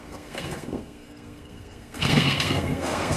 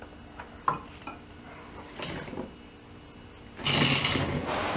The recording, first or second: second